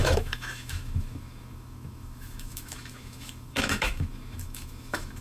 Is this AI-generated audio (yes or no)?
yes